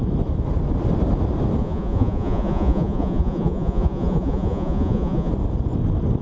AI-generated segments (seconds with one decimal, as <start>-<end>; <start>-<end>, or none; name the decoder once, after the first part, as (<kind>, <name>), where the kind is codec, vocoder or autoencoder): 1.6-5.3 (vocoder, Vocos)